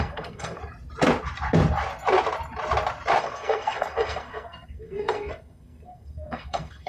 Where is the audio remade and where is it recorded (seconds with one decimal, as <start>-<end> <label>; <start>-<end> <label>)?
0.0-0.6 remade; 0.6-3.2 recorded; 3.2-6.9 remade